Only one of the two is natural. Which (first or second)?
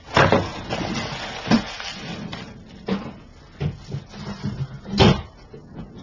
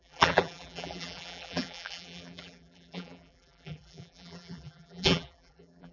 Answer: first